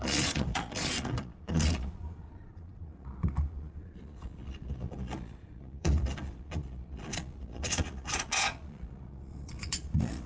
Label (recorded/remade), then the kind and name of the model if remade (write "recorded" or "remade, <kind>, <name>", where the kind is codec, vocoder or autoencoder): remade, vocoder, Vocos